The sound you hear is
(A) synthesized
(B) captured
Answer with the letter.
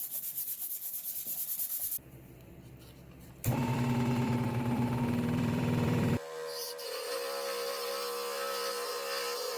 A